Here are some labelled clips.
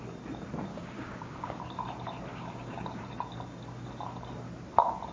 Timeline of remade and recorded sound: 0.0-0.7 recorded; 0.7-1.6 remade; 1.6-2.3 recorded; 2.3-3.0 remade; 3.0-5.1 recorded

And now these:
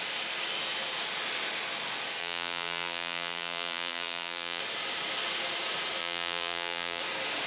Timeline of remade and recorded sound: 0.0-2.2 recorded; 2.2-4.6 remade; 4.6-6.0 recorded; 6.0-7.0 remade; 7.0-7.5 recorded

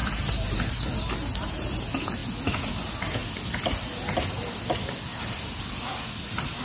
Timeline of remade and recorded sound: 0.0-1.8 remade; 1.8-5.1 recorded; 5.1-5.6 remade; 5.6-6.6 recorded

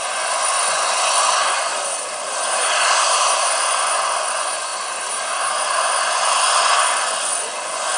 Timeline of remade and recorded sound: 0.0-1.7 remade; 1.7-3.5 recorded; 3.5-4.7 remade; 4.7-5.5 recorded; 5.5-8.0 remade

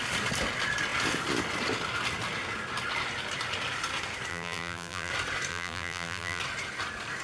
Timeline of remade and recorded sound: 0.0-4.3 recorded; 4.3-5.1 remade; 5.1-5.5 recorded; 5.5-6.4 remade; 6.4-7.2 recorded

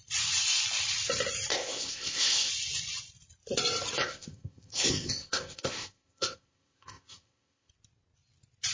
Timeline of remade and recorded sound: 0.0-1.5 recorded; 1.5-2.5 remade; 2.5-4.0 recorded; 4.0-7.7 remade; 7.7-8.7 recorded